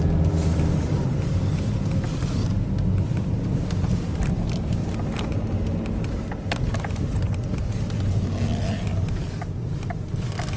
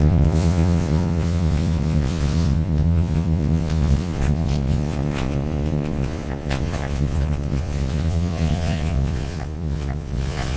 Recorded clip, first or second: first